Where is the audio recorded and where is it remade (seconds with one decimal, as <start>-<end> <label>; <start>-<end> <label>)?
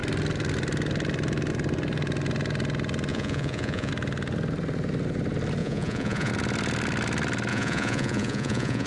0.0-3.1 recorded; 3.1-3.9 remade; 3.9-5.6 recorded; 5.6-6.3 remade; 6.3-7.5 recorded; 7.5-8.9 remade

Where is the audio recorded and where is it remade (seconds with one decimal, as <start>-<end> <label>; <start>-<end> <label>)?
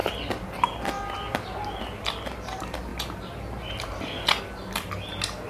0.0-5.5 recorded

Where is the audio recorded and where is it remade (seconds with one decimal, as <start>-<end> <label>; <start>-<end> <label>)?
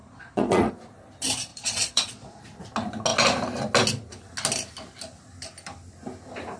0.0-0.7 remade; 0.7-1.5 recorded; 1.5-2.4 remade; 2.4-6.6 recorded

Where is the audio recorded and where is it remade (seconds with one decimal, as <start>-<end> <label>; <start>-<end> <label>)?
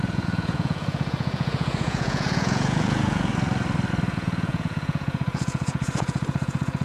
0.0-3.3 remade; 3.3-4.1 recorded; 4.1-6.8 remade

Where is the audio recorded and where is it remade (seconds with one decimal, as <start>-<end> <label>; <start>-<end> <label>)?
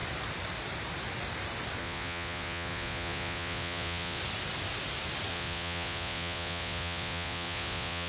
0.0-1.8 recorded; 1.8-4.2 remade; 4.2-5.3 recorded; 5.3-8.1 remade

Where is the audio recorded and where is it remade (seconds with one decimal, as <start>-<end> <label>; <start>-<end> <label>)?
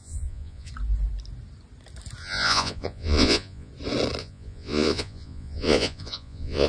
0.0-0.7 remade; 0.7-2.2 recorded; 2.2-3.7 remade; 3.7-4.2 recorded; 4.2-6.7 remade